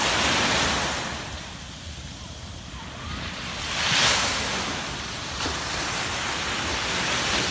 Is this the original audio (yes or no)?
yes